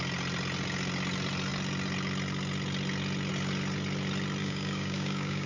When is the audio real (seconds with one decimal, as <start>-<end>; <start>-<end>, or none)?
0.0-4.4